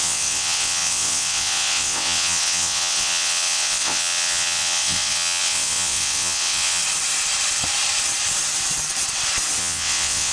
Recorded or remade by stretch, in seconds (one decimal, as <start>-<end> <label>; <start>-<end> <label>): 0.0-6.8 remade; 6.8-9.6 recorded; 9.6-10.3 remade